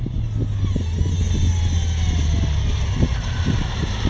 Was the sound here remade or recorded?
recorded